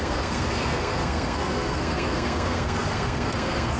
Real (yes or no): no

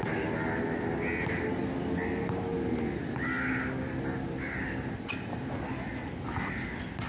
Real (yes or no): yes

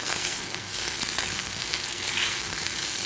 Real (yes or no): no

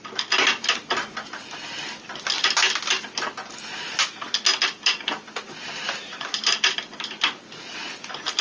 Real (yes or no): yes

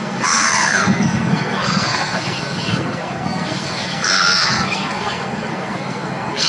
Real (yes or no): no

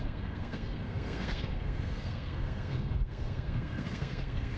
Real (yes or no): no